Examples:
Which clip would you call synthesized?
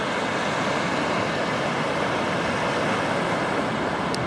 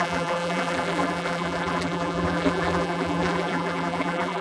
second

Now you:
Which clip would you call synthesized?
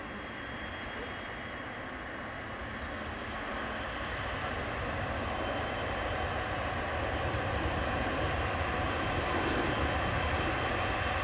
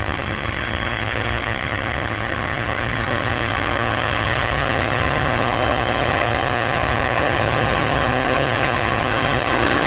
second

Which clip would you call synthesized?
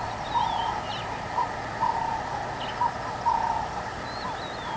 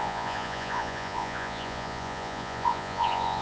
second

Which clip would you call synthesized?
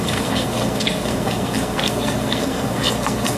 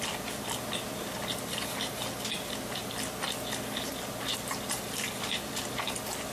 first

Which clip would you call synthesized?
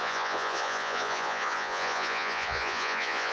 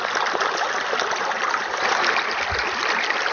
first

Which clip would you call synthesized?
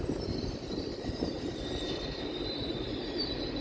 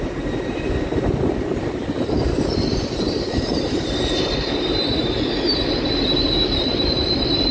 second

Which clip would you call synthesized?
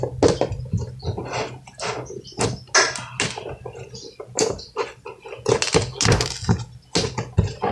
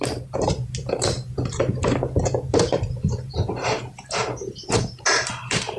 second